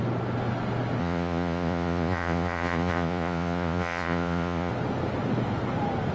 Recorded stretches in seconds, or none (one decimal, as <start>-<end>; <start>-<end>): 0.0-1.0; 4.7-6.1

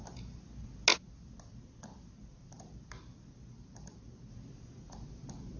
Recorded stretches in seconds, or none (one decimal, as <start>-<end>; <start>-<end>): 0.0-5.6

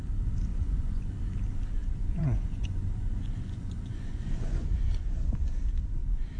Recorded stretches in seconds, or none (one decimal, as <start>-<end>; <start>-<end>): 0.0-0.5; 1.0-1.8; 5.6-6.4